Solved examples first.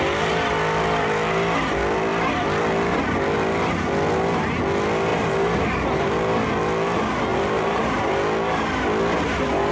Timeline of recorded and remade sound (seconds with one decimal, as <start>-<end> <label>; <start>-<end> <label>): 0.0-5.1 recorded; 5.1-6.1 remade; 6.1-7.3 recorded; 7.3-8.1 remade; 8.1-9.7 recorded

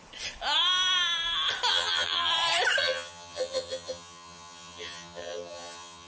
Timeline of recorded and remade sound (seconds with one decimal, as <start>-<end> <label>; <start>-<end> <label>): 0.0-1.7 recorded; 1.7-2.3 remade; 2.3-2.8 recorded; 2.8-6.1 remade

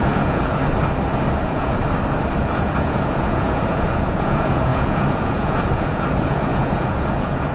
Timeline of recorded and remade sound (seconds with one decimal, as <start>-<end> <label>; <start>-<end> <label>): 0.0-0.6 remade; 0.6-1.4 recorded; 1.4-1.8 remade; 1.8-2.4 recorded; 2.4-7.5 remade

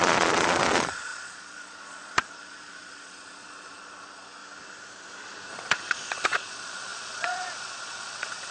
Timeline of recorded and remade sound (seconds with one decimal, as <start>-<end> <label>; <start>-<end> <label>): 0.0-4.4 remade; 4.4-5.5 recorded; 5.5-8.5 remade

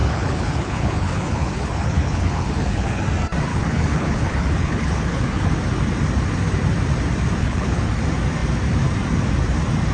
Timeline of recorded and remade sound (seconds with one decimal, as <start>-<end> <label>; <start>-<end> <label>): 0.0-3.0 remade; 3.0-3.5 recorded; 3.5-5.5 remade; 5.5-7.4 recorded; 7.4-8.0 remade; 8.0-9.9 recorded

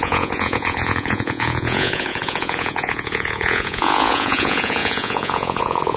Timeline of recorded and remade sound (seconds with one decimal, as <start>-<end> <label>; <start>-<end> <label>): 0.0-6.0 remade

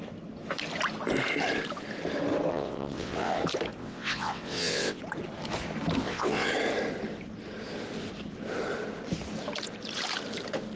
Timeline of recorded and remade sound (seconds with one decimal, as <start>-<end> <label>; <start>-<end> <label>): 0.0-2.5 recorded; 2.5-3.4 remade; 3.4-3.8 recorded; 3.8-5.0 remade; 5.0-6.0 recorded; 6.0-6.5 remade; 6.5-10.8 recorded

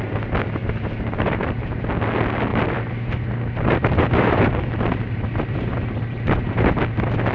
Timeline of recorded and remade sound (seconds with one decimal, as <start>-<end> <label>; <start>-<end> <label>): 0.0-0.6 recorded; 0.6-1.8 remade; 1.8-2.5 recorded; 2.5-6.8 remade; 6.8-7.3 recorded